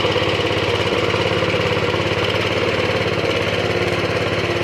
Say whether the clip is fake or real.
real